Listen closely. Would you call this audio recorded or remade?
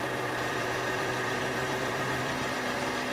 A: remade